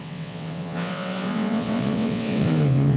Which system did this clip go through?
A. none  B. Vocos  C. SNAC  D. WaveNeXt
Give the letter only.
D